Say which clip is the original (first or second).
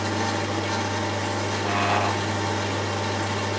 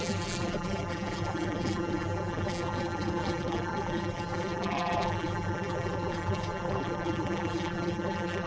first